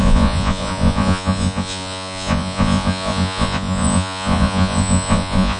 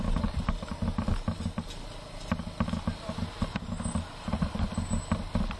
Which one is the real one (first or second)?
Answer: second